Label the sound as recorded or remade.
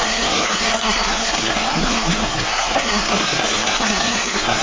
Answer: remade